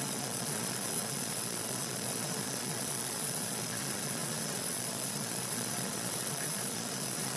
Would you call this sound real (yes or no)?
no